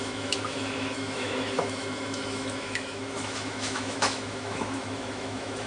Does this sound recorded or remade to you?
remade